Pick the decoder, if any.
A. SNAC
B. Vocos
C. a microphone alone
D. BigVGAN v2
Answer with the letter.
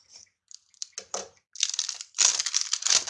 C